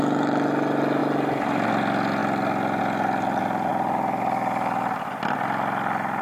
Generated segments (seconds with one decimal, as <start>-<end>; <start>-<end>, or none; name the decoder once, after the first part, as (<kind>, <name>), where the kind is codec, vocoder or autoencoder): none